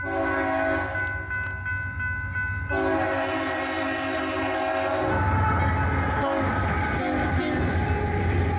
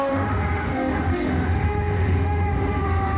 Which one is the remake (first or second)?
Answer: second